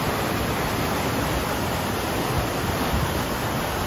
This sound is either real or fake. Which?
real